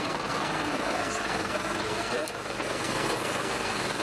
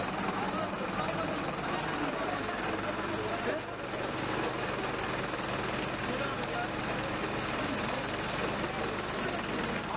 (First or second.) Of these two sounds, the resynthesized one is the first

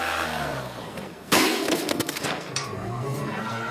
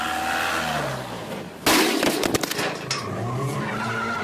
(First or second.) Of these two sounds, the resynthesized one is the first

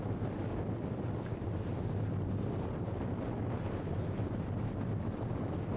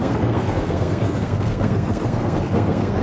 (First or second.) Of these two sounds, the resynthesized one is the second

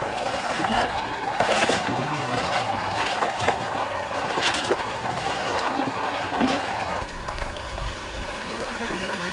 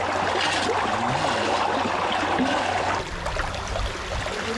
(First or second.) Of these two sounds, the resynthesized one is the first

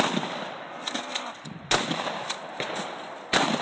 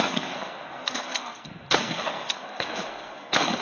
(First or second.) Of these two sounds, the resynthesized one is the second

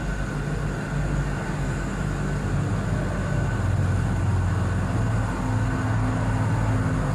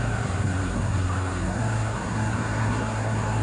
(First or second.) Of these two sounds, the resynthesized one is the second